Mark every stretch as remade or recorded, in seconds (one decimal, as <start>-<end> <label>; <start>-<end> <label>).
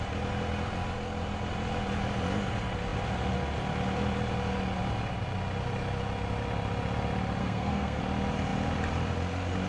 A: 0.0-7.4 recorded; 7.4-8.0 remade; 8.0-9.7 recorded